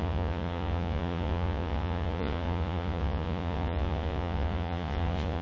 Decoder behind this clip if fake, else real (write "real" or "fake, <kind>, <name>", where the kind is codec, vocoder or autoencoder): fake, vocoder, Vocos